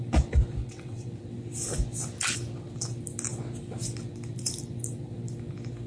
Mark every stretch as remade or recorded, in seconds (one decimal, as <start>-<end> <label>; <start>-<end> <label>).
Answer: 0.0-0.6 recorded; 0.6-1.1 remade; 1.1-5.9 recorded